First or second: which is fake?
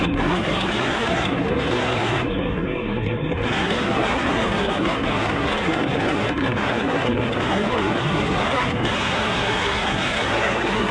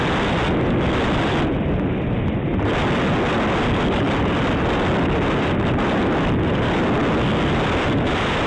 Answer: first